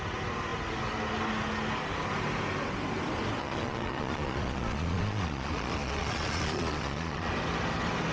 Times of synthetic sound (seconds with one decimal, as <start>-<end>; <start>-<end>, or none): 3.4-7.3